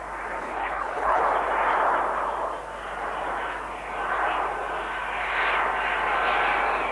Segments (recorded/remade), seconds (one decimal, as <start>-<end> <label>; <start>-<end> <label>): 0.0-0.4 recorded; 0.4-1.2 remade; 1.2-6.9 recorded